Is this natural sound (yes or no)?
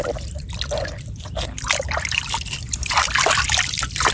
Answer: yes